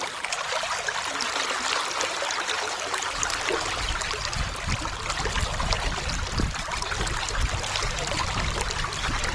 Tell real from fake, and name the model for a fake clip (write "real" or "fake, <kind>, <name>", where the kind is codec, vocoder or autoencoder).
real